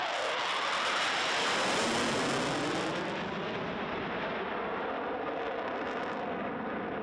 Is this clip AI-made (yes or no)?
no